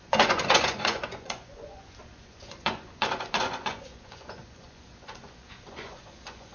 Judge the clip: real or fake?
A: fake